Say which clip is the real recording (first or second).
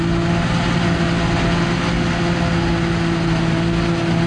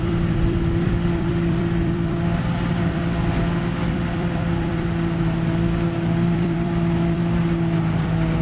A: first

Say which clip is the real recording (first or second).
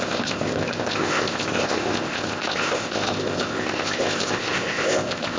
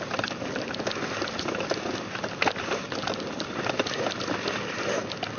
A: second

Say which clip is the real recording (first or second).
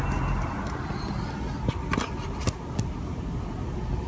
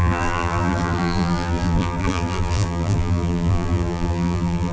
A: first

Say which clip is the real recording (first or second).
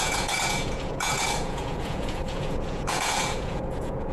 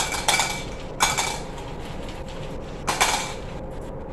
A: second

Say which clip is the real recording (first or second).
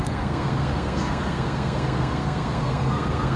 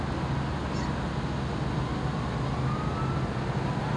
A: second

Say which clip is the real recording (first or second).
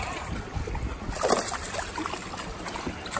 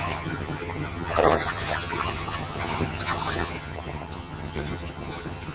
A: first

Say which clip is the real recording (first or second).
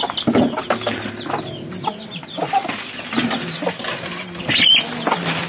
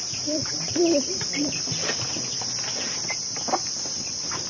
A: first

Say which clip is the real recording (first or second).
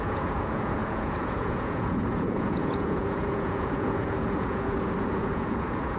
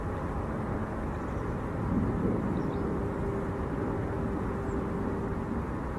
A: second